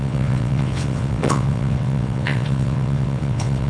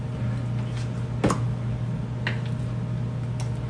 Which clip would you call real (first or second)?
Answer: second